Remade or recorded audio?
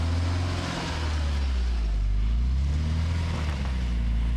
recorded